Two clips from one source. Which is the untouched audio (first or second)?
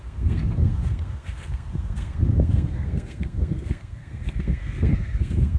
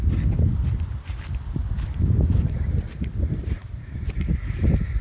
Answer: second